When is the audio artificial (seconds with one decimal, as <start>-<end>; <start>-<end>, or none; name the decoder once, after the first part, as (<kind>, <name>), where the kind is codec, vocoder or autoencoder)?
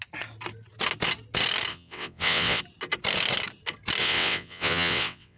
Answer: 1.7-2.6 (vocoder, WaveNeXt); 4.0-5.4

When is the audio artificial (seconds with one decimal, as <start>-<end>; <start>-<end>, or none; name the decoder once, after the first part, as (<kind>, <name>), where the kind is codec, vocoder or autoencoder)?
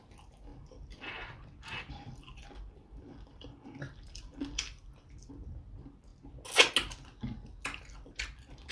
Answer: 0.5-5.3 (vocoder, BigVGAN v2)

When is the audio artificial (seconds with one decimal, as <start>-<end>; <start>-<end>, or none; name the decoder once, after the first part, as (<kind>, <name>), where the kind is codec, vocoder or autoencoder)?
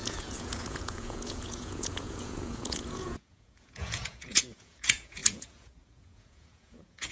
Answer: 0.0-7.1 (vocoder, Vocos)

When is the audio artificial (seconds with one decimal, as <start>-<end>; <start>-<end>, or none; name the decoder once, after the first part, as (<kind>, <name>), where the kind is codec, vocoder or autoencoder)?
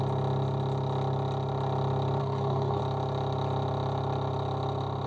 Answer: 2.2-2.8 (codec, SNAC)